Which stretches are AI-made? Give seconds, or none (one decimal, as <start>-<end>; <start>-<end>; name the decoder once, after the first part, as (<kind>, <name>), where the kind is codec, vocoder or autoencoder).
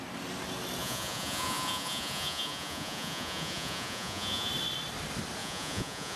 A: 0.8-4.5 (vocoder, Vocos); 5.4-6.2